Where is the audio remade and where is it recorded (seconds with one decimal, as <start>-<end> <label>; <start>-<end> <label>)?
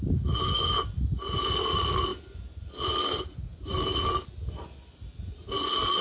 0.0-6.0 recorded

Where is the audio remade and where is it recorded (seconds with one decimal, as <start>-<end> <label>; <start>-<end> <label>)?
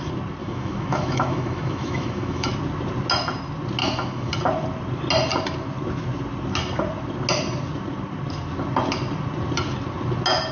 0.0-0.4 recorded; 0.4-2.5 remade; 2.5-3.8 recorded; 3.8-4.3 remade; 4.3-10.5 recorded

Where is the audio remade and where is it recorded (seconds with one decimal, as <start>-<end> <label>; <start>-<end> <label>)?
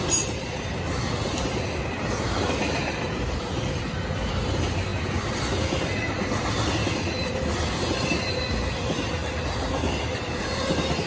0.0-11.1 recorded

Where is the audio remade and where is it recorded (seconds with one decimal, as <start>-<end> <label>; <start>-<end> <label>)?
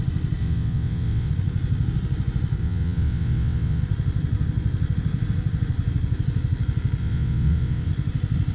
0.0-0.4 recorded; 0.4-1.3 remade; 1.3-2.6 recorded; 2.6-3.8 remade; 3.8-7.0 recorded; 7.0-7.9 remade; 7.9-8.5 recorded